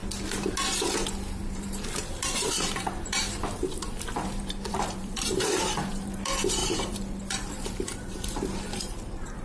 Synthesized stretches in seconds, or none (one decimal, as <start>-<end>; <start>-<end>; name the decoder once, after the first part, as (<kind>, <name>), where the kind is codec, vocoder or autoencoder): 1.3-9.4 (vocoder, BigVGAN v2)